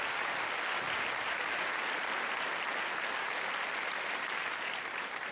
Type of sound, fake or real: real